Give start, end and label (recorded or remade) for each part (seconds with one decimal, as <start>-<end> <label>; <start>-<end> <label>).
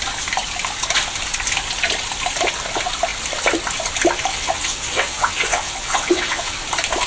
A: 0.0-4.3 recorded; 4.3-6.6 remade; 6.6-7.1 recorded